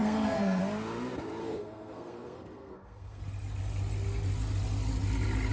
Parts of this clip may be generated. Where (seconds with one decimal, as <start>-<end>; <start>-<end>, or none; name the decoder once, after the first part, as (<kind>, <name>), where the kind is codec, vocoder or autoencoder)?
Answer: 0.0-0.6 (codec, SNAC); 1.4-3.2